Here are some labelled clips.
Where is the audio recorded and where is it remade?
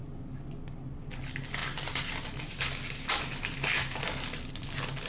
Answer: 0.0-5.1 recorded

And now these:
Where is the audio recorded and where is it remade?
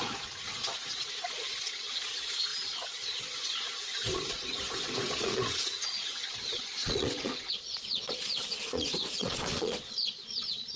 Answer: 0.0-10.8 remade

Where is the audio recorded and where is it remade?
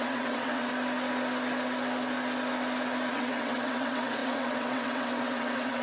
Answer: 0.0-0.7 remade; 0.7-3.1 recorded; 3.1-5.8 remade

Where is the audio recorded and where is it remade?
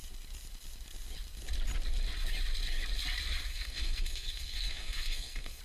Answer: 0.0-3.5 recorded; 3.5-5.6 remade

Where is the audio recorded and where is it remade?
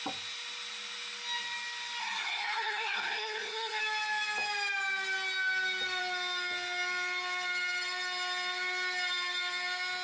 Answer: 0.0-2.0 recorded; 2.0-3.8 remade; 3.8-10.0 recorded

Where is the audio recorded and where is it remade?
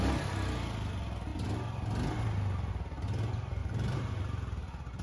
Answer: 0.0-3.6 recorded; 3.6-4.2 remade; 4.2-5.0 recorded